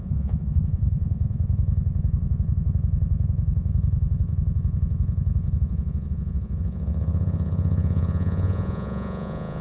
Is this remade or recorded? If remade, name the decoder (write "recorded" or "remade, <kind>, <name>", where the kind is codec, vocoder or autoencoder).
remade, vocoder, Vocos